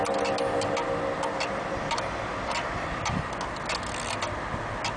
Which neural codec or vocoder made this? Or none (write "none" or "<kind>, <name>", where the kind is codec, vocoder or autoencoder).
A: none